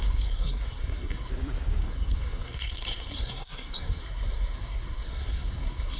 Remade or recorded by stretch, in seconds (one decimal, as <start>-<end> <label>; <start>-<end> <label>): 0.0-1.3 remade; 1.3-1.8 recorded; 1.8-6.0 remade